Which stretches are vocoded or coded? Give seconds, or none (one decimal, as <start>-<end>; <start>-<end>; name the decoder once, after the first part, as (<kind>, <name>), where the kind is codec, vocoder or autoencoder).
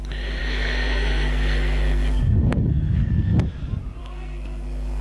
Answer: 0.4-3.4 (codec, SNAC); 4.0-5.0